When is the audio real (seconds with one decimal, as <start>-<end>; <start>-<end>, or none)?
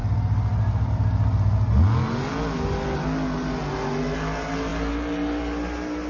0.0-6.1